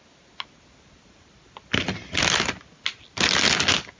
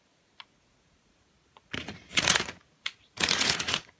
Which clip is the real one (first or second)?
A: first